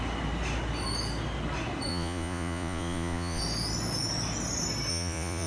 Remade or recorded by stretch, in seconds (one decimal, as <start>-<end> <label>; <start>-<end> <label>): 0.0-1.9 recorded; 1.9-3.4 remade; 3.4-4.9 recorded; 4.9-5.5 remade